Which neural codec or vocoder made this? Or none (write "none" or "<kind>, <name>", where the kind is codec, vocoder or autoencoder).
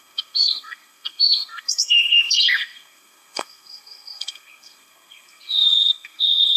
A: codec, SNAC